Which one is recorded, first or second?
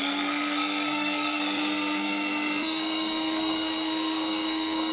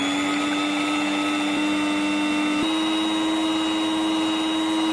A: second